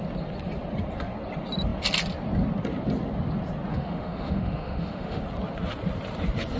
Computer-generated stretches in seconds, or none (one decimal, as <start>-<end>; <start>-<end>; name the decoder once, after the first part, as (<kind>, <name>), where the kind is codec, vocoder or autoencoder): 3.7-5.2 (autoencoder, DAC-VAE)